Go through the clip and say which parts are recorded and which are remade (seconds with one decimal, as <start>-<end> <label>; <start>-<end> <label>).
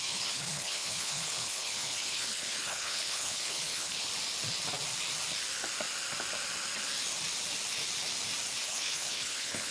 0.0-4.1 remade; 4.1-8.6 recorded; 8.6-9.7 remade